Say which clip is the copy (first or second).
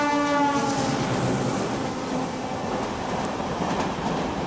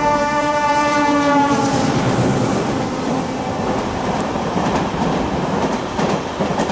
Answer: second